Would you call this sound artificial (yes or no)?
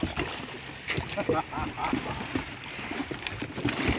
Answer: no